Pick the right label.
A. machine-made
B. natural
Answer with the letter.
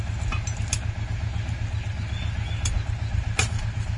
B